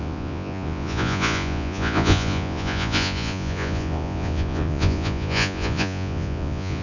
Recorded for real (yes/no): no